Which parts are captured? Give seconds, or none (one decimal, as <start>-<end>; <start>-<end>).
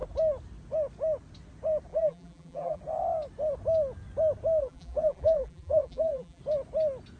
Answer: 0.0-1.9; 2.8-4.6; 6.4-7.2